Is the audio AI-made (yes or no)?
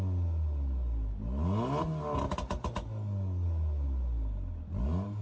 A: no